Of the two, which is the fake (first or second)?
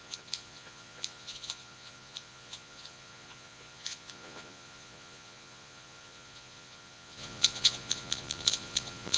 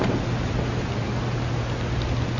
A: first